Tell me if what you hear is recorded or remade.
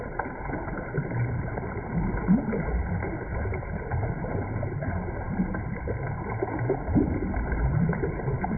remade